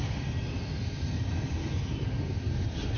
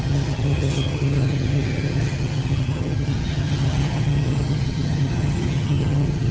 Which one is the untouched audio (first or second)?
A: first